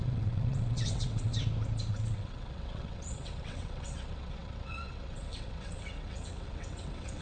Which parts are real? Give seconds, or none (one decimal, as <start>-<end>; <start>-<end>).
1.3-1.9